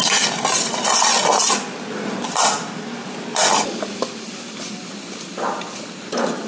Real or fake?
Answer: real